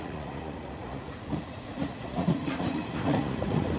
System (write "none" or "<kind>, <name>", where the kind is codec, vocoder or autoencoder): vocoder, Vocos